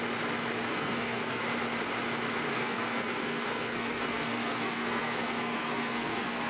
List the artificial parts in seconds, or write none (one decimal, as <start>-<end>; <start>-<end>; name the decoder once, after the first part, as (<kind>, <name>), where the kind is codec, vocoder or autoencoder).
0.7-1.4 (codec, SNAC); 2.5-6.5